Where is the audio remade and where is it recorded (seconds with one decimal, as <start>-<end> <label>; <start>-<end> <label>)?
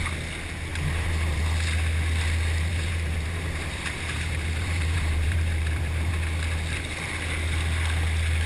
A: 0.0-0.7 recorded; 0.7-1.4 remade; 1.4-2.7 recorded; 2.7-6.1 remade; 6.1-8.5 recorded